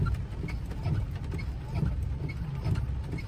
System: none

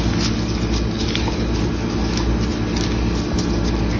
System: none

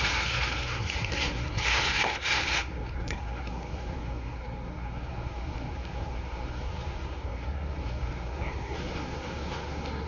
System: codec, SNAC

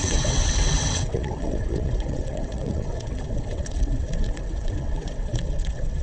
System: vocoder, WaveNeXt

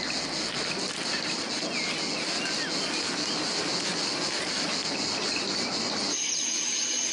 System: none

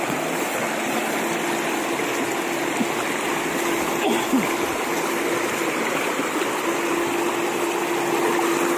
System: none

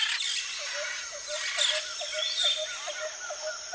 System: none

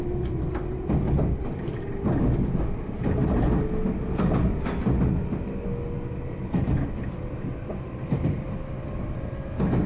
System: none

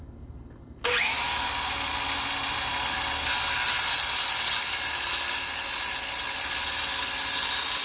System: none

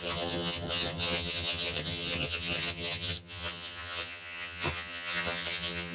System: vocoder, HiFi-GAN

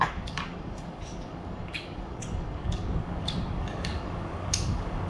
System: codec, DAC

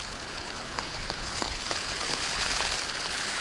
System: codec, HILCodec